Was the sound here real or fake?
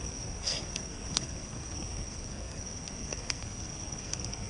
fake